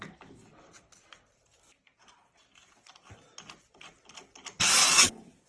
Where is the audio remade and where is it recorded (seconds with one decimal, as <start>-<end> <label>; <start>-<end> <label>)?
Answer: 0.0-4.8 recorded; 4.8-5.5 remade